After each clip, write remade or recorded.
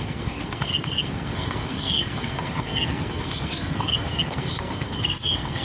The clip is remade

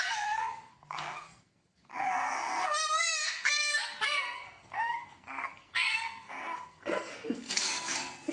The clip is remade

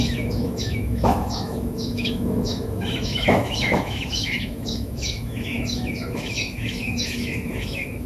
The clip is remade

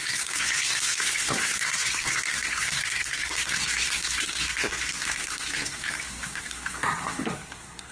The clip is remade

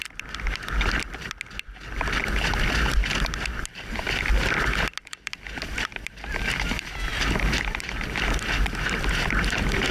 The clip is recorded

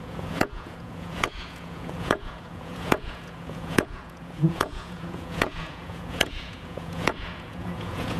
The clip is remade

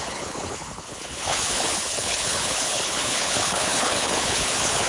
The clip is remade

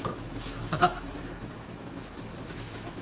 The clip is remade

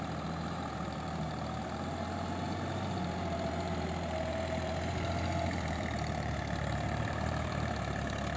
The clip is remade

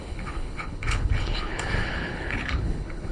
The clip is remade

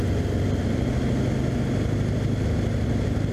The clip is recorded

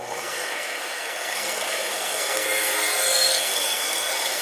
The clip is remade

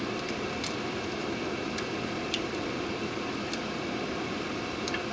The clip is remade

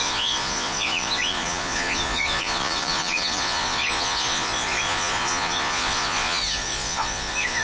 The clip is remade